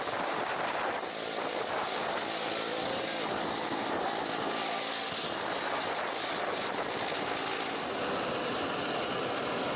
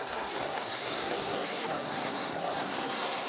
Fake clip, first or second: second